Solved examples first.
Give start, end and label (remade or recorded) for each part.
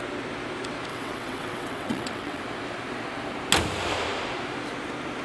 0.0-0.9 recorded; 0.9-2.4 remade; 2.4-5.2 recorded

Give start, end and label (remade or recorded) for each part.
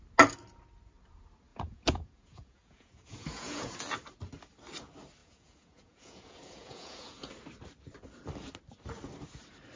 0.0-1.5 recorded; 1.5-3.8 remade; 3.8-5.2 recorded; 5.2-7.3 remade; 7.3-9.8 recorded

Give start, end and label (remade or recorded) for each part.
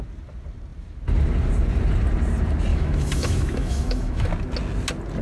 0.0-2.7 recorded; 2.7-4.3 remade; 4.3-5.2 recorded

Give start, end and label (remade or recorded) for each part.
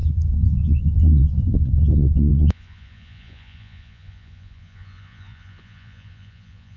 0.0-6.8 remade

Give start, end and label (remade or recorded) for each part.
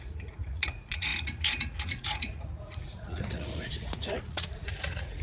0.0-5.2 remade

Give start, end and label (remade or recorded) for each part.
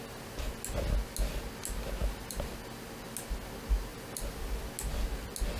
0.0-2.0 recorded; 2.0-2.5 remade; 2.5-3.9 recorded; 3.9-4.7 remade; 4.7-5.6 recorded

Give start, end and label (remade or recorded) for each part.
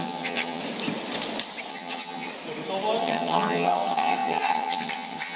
0.0-0.6 remade; 0.6-1.7 recorded; 1.7-2.3 remade; 2.3-3.0 recorded; 3.0-5.4 remade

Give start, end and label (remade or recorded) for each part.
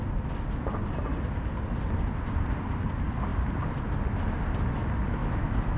0.0-5.2 recorded; 5.2-5.8 remade